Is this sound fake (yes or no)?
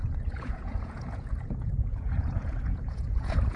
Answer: yes